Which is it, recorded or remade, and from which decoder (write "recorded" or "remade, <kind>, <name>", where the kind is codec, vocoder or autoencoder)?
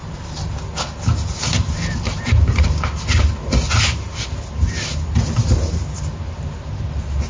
recorded